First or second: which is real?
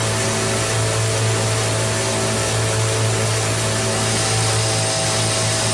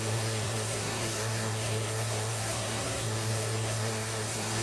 first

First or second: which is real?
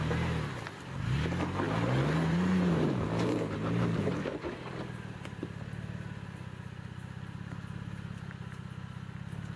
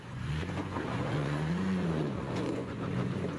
first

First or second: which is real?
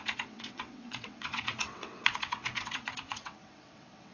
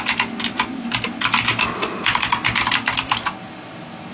second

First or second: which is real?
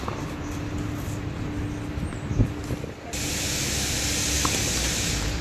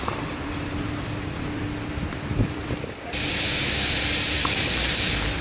first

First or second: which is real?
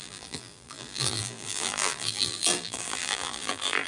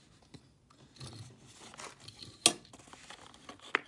second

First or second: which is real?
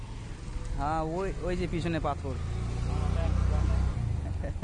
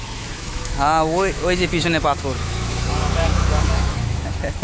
first